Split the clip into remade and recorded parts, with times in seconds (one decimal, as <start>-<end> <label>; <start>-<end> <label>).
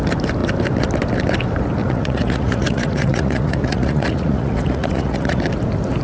0.0-1.8 recorded; 1.8-5.4 remade; 5.4-6.0 recorded